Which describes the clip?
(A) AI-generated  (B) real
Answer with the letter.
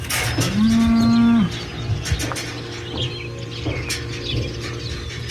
B